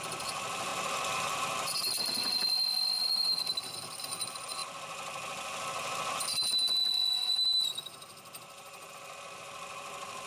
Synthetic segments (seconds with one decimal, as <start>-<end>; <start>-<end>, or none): none